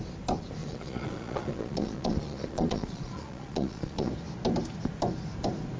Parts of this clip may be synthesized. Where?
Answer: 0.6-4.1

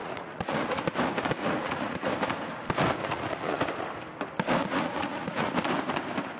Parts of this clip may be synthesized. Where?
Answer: 0.0-0.8; 1.4-2.1; 3.0-3.6; 4.6-5.5

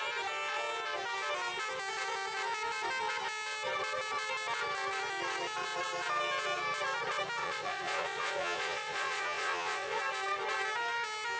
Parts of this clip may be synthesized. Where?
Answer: 7.4-10.0